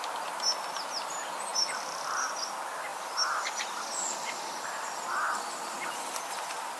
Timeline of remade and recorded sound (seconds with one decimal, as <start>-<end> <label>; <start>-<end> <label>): 0.0-2.9 recorded; 2.9-4.9 remade; 4.9-6.8 recorded

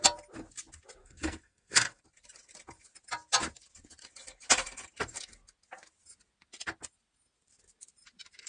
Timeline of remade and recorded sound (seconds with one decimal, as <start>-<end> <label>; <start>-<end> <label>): 0.0-1.0 recorded; 1.0-2.0 remade; 2.0-8.5 recorded

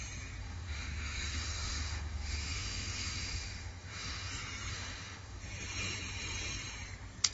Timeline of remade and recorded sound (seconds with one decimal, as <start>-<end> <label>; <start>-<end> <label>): 0.0-0.4 recorded; 0.4-4.3 remade; 4.3-4.7 recorded; 4.7-5.4 remade; 5.4-7.3 recorded

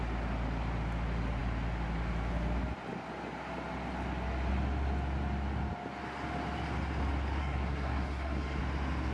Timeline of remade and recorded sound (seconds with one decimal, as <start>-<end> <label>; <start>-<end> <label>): 0.0-7.4 recorded; 7.4-8.6 remade; 8.6-9.1 recorded

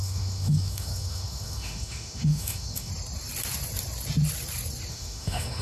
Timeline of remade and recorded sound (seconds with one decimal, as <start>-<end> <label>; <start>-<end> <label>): 0.0-2.9 remade; 2.9-4.9 recorded; 4.9-5.6 remade

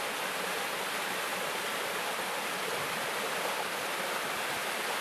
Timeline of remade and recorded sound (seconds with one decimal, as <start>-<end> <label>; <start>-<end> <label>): 0.0-1.3 recorded; 1.3-4.3 remade; 4.3-5.0 recorded

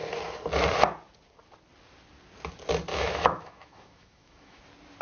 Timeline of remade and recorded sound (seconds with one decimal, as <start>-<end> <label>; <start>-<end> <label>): 0.0-2.9 recorded; 2.9-4.6 remade; 4.6-5.0 recorded